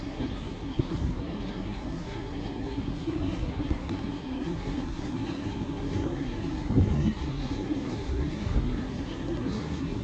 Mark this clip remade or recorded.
remade